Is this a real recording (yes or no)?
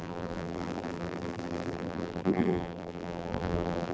no